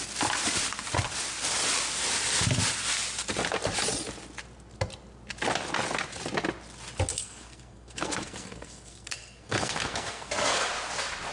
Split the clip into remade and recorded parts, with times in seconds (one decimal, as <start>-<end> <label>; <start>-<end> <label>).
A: 0.0-7.1 recorded; 7.1-10.7 remade; 10.7-11.3 recorded